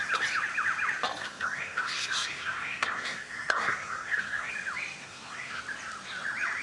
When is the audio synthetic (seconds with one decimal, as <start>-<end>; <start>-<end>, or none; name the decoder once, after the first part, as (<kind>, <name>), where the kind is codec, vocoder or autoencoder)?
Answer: 1.2-4.5 (codec, SNAC); 5.0-5.6